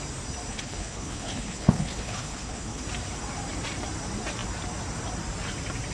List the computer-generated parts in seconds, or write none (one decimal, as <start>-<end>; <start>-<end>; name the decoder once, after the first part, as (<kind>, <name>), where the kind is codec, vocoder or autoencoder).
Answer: 0.5-2.8 (codec, HILCodec)